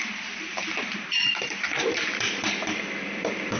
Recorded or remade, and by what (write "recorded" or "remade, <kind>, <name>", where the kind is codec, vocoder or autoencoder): remade, vocoder, BigVGAN v2